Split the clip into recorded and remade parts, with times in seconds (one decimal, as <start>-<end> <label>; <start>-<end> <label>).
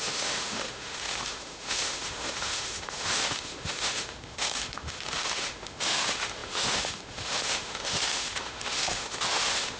0.0-9.8 remade